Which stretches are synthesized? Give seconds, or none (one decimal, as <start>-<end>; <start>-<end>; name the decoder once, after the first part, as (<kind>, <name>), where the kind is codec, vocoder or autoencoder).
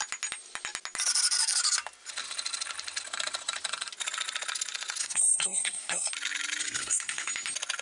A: 5.0-6.1 (codec, SNAC); 6.6-7.3